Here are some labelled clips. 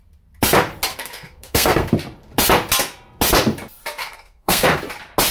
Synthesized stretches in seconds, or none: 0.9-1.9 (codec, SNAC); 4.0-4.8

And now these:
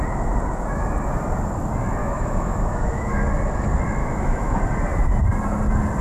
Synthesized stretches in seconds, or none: 2.0-3.2 (autoencoder, DAC-VAE); 4.0-4.6

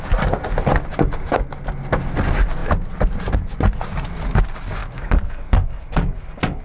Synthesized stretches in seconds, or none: 4.8-6.6 (codec, DAC)